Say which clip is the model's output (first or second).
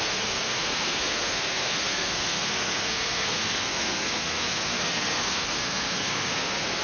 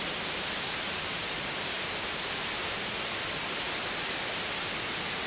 first